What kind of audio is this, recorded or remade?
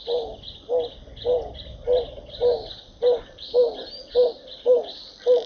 recorded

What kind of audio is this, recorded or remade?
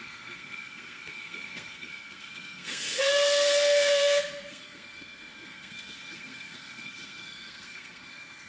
remade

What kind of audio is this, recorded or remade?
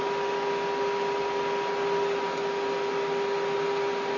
recorded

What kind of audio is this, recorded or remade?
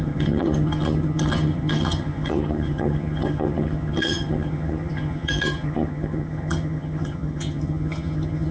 remade